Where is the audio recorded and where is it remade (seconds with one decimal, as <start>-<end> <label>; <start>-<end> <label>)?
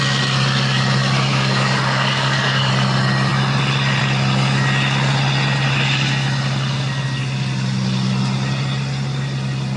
0.0-1.3 recorded; 1.3-2.7 remade; 2.7-9.8 recorded